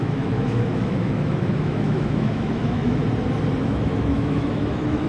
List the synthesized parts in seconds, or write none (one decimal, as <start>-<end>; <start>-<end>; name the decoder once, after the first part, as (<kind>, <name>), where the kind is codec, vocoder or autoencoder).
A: 0.0-3.0 (autoencoder, DAC-VAE); 3.6-5.1